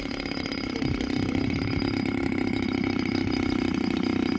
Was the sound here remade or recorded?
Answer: remade